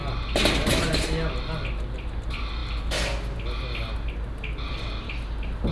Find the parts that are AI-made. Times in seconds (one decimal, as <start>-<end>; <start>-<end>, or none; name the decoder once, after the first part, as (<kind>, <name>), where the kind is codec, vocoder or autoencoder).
none